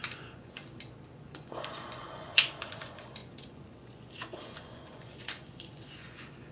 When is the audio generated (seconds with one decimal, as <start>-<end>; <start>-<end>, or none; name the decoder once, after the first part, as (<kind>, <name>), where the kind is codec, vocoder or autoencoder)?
0.0-0.6 (vocoder, Vocos); 1.2-6.5